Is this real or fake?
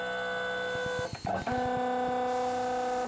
real